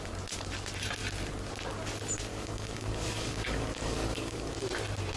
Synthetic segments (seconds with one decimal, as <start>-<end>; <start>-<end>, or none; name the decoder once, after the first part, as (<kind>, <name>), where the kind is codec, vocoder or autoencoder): 2.3-4.6 (codec, DAC)